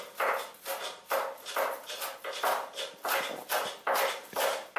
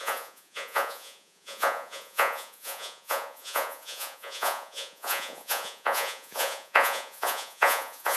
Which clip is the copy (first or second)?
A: second